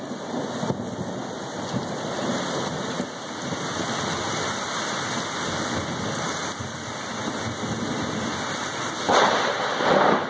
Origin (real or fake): real